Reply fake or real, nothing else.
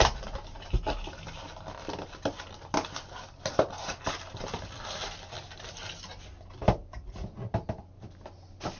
real